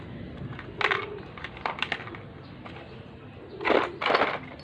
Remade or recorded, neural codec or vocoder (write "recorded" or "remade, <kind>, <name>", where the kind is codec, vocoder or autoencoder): recorded